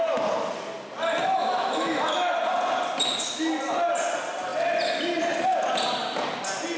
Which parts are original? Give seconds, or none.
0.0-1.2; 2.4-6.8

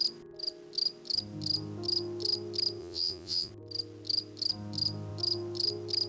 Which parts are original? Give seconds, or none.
0.0-2.8; 3.5-6.1

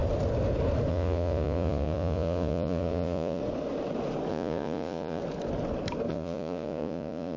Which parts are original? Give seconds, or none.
0.0-0.9; 3.4-4.3; 5.2-6.1

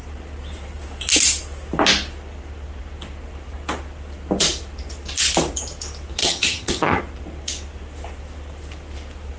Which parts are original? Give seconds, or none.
0.0-6.2; 7.0-9.4

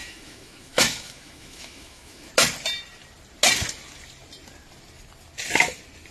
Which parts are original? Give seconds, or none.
2.3-6.1

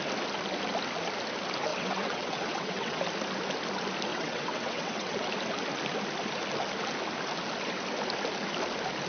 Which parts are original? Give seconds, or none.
0.0-1.7; 3.0-4.1; 5.3-9.1